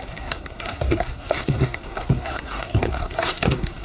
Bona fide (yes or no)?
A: no